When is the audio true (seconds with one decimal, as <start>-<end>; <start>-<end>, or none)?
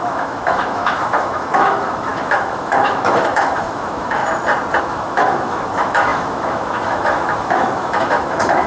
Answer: 4.2-4.8